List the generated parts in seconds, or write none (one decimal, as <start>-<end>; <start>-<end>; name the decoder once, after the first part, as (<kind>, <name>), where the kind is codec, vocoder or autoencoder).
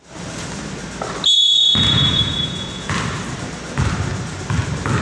1.5-2.9 (vocoder, Vocos)